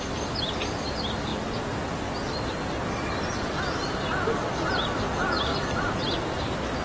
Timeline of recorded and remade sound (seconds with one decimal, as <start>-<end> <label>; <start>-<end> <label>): 0.0-5.5 recorded; 5.5-6.8 remade